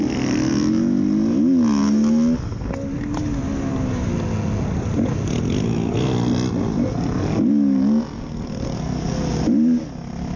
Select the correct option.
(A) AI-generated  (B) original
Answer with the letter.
B